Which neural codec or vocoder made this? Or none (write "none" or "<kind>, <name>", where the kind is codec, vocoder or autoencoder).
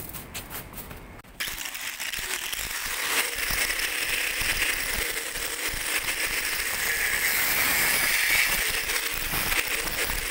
none